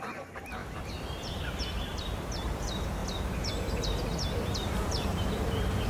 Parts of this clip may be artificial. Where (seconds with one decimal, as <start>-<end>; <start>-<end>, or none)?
0.0-3.0; 4.4-5.9